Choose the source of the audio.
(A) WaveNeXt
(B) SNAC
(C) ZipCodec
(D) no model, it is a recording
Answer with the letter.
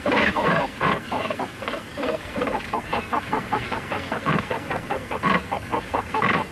B